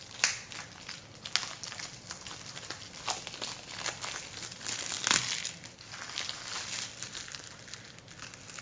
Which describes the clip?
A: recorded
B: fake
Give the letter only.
A